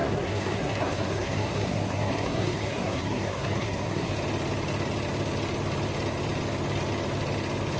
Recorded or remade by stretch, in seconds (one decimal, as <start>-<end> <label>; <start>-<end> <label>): 0.0-4.1 remade; 4.1-7.8 recorded

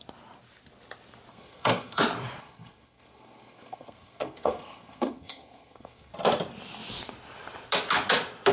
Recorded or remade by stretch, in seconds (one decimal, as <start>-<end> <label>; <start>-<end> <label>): 0.0-1.3 recorded; 1.3-2.0 remade; 2.0-2.4 recorded; 2.4-6.1 remade; 6.1-8.5 recorded

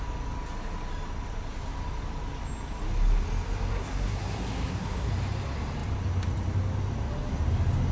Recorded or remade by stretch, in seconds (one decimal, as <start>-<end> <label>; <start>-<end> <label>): 0.0-3.7 recorded; 3.7-5.1 remade; 5.1-7.9 recorded

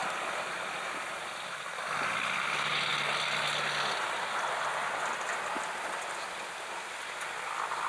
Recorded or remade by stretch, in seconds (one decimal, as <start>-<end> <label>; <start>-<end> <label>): 0.0-7.9 recorded

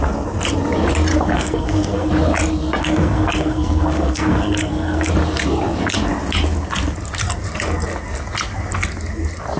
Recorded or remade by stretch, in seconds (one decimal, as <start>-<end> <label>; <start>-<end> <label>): 0.0-1.1 recorded; 1.1-2.1 remade; 2.1-2.8 recorded; 2.8-5.1 remade; 5.1-9.6 recorded

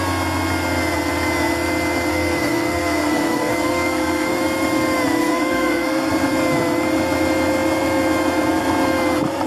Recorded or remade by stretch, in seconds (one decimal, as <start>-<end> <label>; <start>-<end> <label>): 0.0-2.1 recorded; 2.1-4.4 remade; 4.4-5.2 recorded; 5.2-6.1 remade; 6.1-9.5 recorded